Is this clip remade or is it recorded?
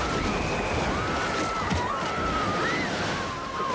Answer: recorded